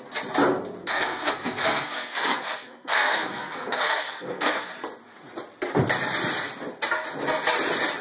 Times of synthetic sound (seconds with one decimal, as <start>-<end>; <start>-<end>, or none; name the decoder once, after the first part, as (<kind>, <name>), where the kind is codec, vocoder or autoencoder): 0.8-4.7 (codec, SNAC)